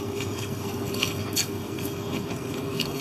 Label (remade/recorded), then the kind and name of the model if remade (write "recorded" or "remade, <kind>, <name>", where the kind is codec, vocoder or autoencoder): remade, codec, SNAC